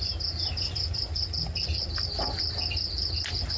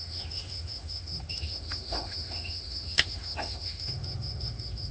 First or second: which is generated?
second